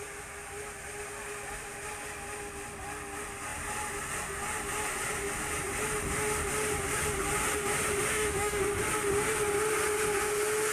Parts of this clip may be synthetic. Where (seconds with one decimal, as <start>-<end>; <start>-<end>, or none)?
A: 8.1-8.6